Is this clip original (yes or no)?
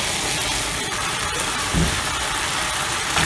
yes